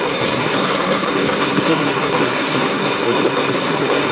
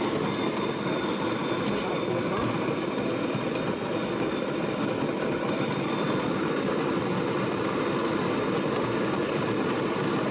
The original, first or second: second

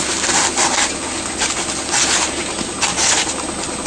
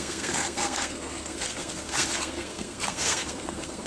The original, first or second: first